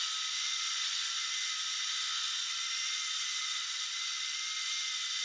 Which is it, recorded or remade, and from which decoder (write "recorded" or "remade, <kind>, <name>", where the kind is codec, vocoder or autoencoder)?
recorded